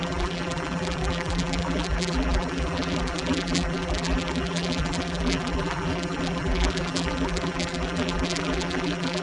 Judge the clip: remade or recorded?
remade